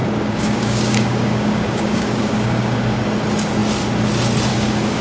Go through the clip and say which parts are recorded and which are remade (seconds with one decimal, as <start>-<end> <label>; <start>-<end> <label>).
0.0-3.0 remade; 3.0-4.5 recorded; 4.5-5.0 remade